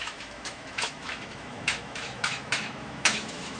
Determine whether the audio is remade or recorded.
remade